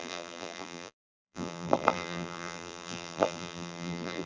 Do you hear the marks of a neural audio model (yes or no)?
yes